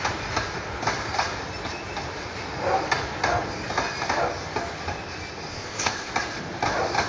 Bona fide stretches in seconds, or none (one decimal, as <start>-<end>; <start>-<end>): 0.0-5.5; 6.1-7.1